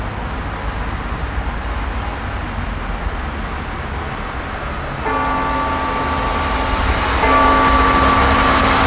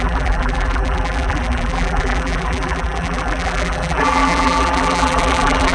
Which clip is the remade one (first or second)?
second